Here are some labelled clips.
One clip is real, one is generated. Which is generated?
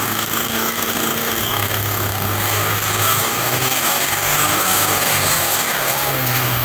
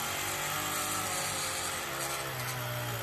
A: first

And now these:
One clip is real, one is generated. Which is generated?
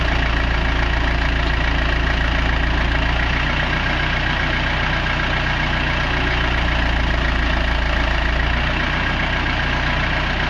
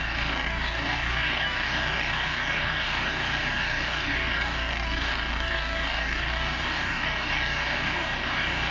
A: second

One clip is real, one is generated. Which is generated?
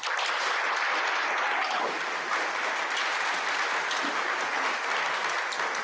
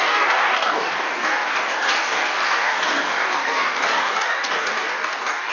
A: second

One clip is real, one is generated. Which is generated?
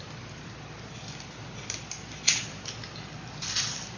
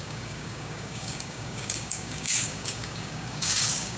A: second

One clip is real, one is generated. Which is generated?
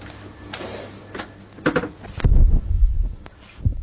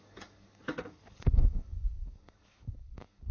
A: second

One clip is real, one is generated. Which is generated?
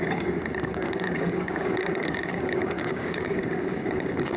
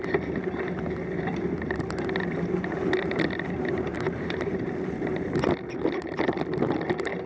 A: first